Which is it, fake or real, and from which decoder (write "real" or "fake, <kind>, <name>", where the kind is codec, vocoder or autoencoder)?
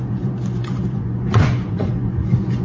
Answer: fake, vocoder, Vocos